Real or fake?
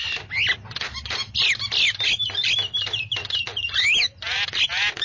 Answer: real